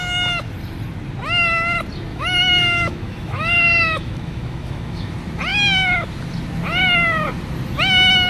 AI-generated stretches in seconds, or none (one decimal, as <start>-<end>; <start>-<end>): 2.1-5.1